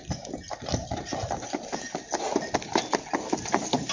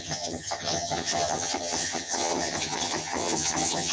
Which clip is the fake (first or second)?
second